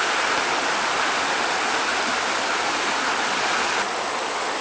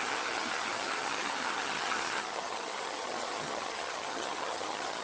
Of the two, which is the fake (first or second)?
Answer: second